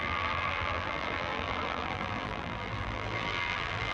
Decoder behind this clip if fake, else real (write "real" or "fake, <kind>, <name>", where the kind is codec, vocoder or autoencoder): fake, vocoder, BigVGAN v2